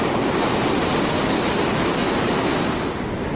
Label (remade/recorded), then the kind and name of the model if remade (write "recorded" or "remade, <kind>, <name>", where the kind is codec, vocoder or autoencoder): recorded